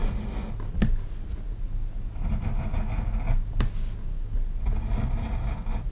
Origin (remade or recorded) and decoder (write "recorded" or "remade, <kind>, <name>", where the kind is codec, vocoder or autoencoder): recorded